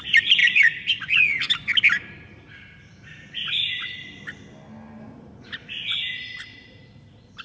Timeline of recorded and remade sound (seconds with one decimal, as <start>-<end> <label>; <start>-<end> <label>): 0.0-0.4 recorded; 0.4-1.4 remade; 1.4-7.4 recorded